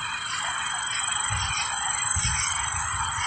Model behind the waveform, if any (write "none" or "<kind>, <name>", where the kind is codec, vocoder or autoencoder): none